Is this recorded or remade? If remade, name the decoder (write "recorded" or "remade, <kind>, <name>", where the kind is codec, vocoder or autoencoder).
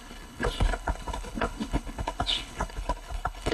remade, codec, HILCodec